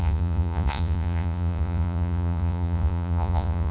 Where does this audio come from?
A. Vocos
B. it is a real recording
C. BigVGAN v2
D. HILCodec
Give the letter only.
A